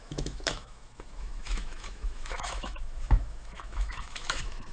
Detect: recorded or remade remade